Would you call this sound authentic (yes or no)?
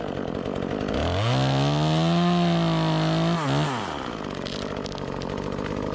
yes